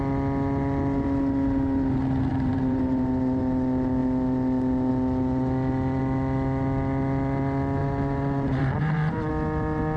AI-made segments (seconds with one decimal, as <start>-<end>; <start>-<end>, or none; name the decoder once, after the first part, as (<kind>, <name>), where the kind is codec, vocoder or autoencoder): 2.3-3.4 (vocoder, BigVGAN v2); 7.8-9.3